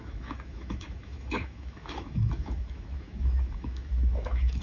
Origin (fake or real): fake